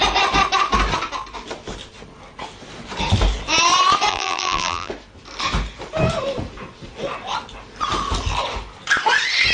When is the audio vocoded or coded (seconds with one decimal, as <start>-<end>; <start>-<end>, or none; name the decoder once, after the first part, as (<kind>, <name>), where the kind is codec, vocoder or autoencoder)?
4.1-4.9 (vocoder, BigVGAN v2)